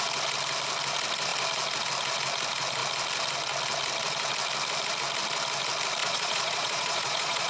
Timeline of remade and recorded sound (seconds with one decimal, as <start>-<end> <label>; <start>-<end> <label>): 0.0-6.0 recorded; 6.0-7.5 remade